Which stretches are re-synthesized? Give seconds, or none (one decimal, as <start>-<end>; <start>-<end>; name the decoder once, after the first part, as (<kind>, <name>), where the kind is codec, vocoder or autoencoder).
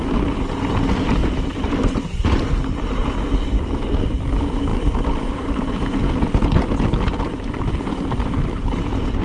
1.2-2.6 (vocoder, BigVGAN v2)